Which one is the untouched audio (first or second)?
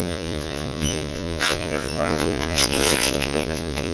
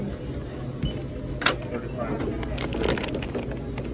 second